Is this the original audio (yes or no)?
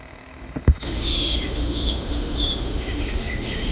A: no